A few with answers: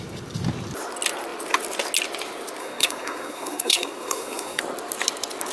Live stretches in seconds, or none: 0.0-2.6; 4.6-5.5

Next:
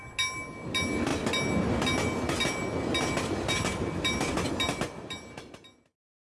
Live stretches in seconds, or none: 0.0-6.3

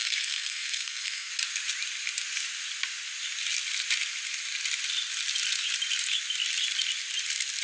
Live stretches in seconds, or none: 1.3-7.6

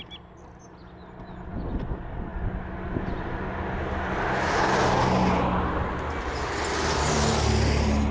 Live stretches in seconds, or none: 0.0-8.1

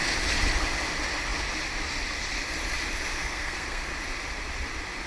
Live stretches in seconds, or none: 0.0-3.1; 3.9-5.1

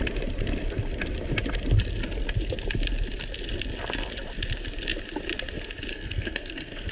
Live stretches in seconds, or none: 0.0-5.9